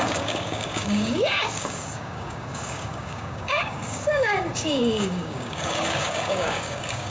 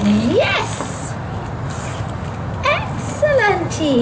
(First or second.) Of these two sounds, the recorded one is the second